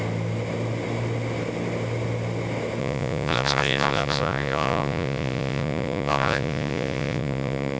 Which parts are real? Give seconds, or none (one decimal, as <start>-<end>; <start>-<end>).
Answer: 0.0-2.8